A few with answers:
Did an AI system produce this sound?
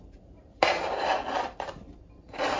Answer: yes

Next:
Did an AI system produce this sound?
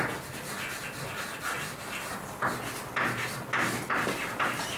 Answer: no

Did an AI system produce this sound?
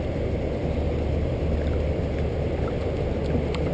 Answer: yes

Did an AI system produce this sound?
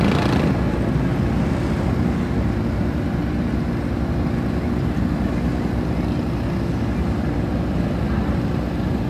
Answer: no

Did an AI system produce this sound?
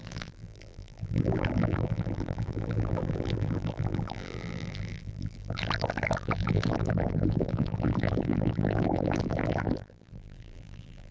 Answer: yes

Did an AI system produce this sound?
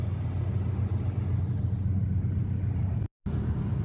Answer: no